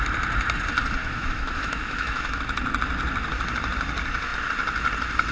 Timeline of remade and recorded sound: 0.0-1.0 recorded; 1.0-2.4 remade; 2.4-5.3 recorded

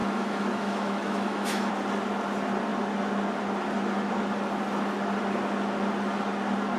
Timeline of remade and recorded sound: 0.0-1.7 remade; 1.7-6.8 recorded

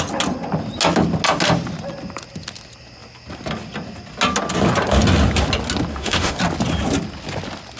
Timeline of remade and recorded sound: 0.0-5.9 recorded; 5.9-6.4 remade; 6.4-7.8 recorded

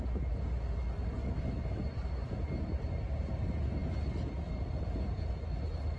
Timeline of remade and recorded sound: 0.0-1.2 recorded; 1.2-1.8 remade; 1.8-6.0 recorded

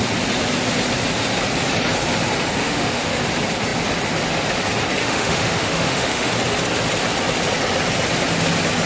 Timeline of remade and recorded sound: 0.0-2.6 recorded; 2.6-3.2 remade; 3.2-5.0 recorded; 5.0-6.3 remade; 6.3-8.9 recorded

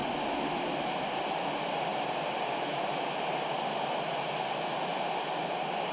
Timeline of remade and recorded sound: 0.0-5.9 recorded